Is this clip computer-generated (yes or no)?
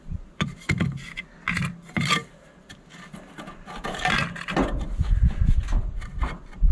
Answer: no